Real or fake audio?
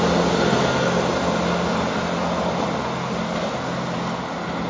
real